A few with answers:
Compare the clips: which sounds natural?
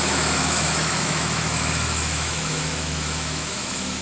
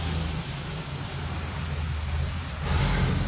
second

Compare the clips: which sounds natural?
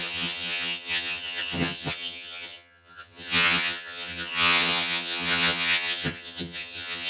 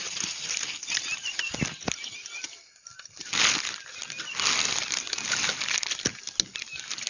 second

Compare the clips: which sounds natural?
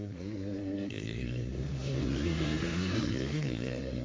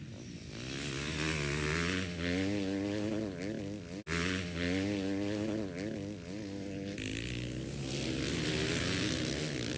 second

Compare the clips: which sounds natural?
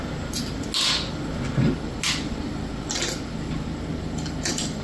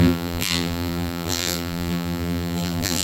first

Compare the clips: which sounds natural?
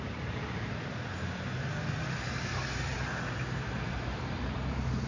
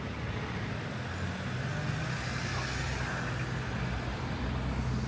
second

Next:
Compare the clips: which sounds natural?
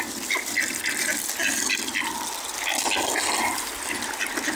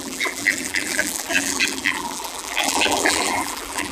first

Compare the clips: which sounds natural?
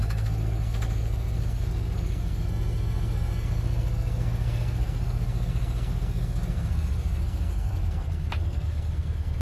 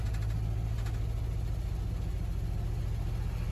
second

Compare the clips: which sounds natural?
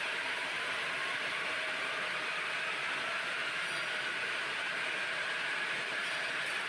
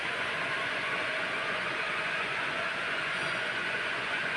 first